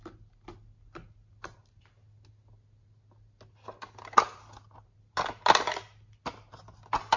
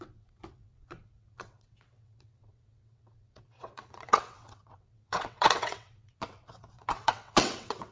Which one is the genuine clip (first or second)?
first